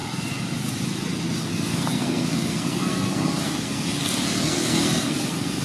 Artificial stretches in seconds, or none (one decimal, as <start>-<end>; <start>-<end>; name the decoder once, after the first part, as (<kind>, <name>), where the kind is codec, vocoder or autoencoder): 1.4-5.6 (codec, SNAC)

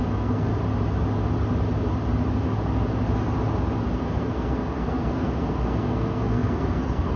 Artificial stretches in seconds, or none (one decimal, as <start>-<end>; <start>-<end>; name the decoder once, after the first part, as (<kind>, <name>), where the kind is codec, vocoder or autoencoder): 0.0-0.5 (codec, SNAC); 3.9-7.2

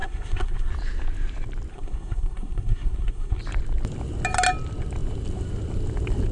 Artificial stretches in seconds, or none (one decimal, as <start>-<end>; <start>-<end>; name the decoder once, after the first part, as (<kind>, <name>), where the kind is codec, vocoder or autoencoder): 0.0-0.7 (codec, SNAC); 1.7-3.4

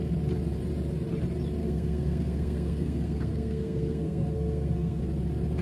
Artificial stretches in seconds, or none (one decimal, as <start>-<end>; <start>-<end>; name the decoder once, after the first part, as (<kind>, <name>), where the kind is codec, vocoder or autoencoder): 1.6-5.0 (codec, SNAC)

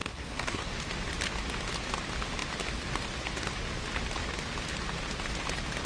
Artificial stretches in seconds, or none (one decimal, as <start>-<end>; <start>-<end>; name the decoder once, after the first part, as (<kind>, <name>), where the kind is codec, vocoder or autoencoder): 0.0-0.7 (codec, SNAC)

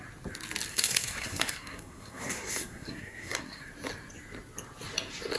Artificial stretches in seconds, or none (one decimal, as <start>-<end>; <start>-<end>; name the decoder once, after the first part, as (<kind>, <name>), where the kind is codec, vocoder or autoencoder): 0.7-3.7 (codec, SNAC)